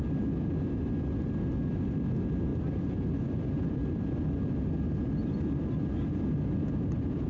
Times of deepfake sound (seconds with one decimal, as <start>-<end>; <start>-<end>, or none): 2.5-7.3